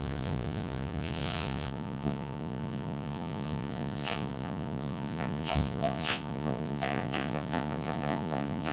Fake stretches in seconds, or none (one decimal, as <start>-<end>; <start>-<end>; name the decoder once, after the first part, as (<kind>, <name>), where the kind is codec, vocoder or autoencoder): 0.0-8.7 (vocoder, Vocos)